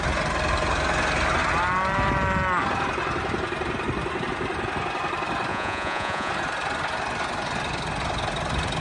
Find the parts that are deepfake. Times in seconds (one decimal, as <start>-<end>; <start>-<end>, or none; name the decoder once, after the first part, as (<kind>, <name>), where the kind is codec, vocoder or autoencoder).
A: 5.5-6.3 (vocoder, Vocos)

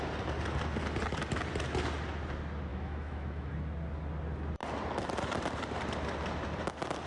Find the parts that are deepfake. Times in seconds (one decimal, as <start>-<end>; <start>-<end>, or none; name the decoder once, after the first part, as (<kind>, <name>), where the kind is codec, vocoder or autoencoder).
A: 2.7-3.5 (autoencoder, DAC-VAE)

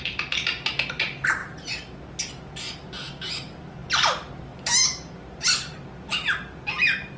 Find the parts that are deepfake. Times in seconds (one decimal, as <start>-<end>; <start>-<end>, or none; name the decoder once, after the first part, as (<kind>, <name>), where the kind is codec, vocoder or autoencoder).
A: none

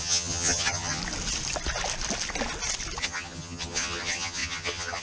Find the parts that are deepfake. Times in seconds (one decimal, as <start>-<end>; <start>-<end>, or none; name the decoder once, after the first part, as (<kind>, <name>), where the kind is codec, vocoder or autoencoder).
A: 0.0-1.0 (vocoder, HiFi-GAN); 3.0-5.0

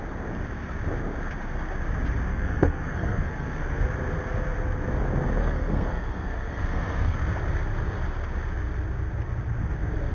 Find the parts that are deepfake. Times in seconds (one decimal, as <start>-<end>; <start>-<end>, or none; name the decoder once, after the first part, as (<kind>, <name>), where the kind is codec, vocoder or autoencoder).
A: 2.3-3.8 (codec, SNAC); 5.4-7.2

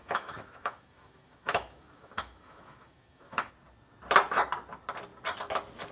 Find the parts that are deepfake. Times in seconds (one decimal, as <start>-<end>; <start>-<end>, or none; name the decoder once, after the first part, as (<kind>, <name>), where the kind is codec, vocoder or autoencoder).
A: 0.0-3.5 (autoencoder, DAC-VAE)

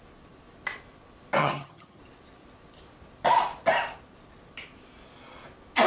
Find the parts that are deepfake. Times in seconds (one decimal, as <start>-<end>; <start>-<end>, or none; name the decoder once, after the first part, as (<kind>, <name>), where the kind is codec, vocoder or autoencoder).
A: 1.4-2.0 (vocoder, HiFi-GAN)

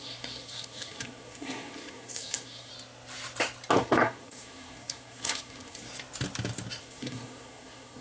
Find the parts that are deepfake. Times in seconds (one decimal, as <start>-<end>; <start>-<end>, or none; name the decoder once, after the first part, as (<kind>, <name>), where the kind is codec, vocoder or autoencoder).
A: 0.0-2.7 (codec, SNAC); 3.8-5.9; 6.8-8.0